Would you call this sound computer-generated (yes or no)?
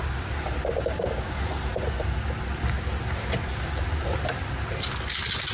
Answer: no